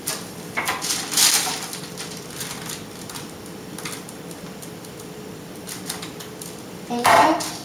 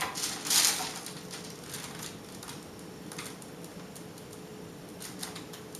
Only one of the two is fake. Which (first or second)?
first